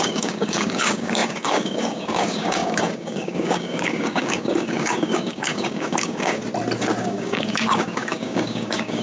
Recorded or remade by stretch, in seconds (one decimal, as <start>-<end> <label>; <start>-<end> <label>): 0.0-6.4 remade; 6.4-7.0 recorded; 7.0-9.0 remade